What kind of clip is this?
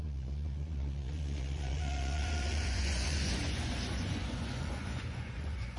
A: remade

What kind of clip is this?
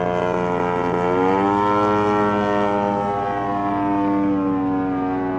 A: recorded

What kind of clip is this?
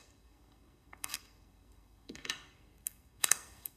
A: remade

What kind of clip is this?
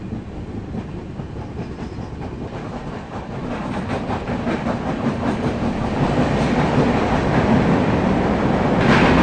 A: recorded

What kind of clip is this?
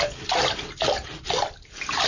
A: recorded